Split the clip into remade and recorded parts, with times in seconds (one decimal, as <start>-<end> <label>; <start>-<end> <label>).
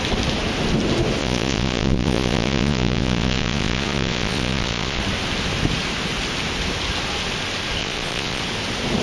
0.0-1.2 recorded; 1.2-5.0 remade; 5.0-7.8 recorded; 7.8-8.4 remade; 8.4-9.0 recorded